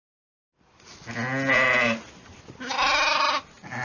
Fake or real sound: real